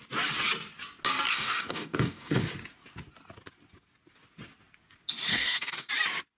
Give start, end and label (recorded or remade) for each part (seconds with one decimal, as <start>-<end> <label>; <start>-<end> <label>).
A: 0.0-1.3 recorded; 1.3-2.4 remade; 2.4-5.3 recorded; 5.3-5.9 remade; 5.9-6.4 recorded